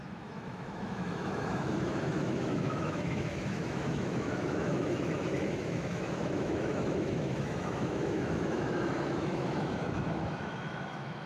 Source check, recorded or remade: remade